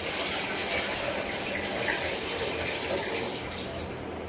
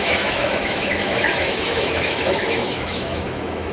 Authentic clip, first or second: first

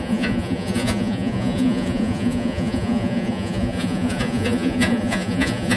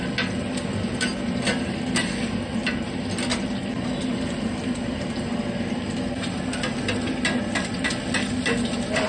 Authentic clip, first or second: second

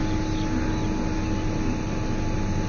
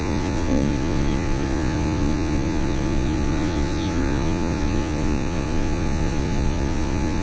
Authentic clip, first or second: first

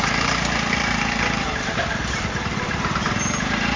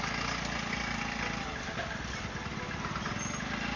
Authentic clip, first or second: second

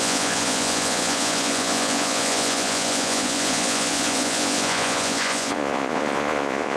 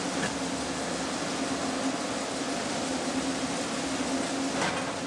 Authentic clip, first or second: second